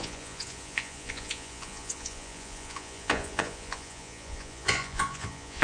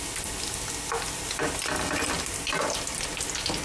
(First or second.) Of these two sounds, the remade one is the first